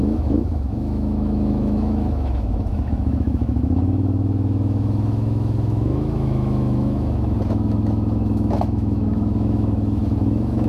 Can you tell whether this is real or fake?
fake